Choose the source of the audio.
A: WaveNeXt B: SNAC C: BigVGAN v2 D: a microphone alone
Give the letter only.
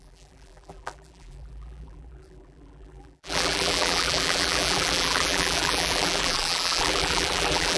C